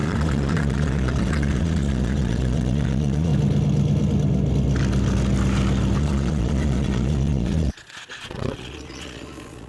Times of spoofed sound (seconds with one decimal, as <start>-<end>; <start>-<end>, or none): 0.0-3.3; 6.0-9.7